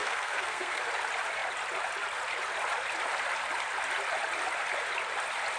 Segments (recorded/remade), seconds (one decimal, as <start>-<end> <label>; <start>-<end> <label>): 0.0-0.8 remade; 0.8-5.6 recorded